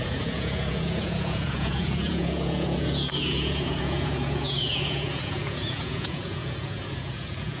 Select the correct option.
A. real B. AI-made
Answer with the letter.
B